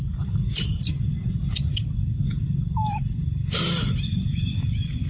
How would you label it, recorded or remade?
recorded